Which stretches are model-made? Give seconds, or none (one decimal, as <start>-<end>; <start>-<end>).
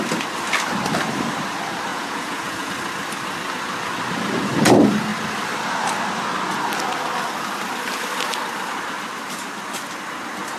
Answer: 1.9-2.7